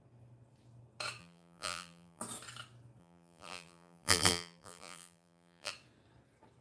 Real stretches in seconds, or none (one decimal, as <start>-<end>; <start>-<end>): 0.0-1.2; 2.2-3.0; 5.7-6.6